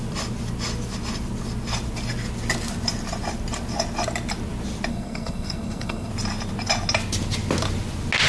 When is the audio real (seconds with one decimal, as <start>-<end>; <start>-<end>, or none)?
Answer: 0.0-4.9; 6.1-8.3